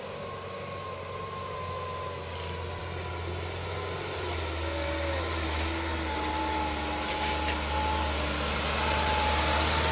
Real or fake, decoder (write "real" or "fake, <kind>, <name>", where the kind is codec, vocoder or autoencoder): real